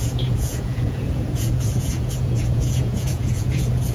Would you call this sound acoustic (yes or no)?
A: no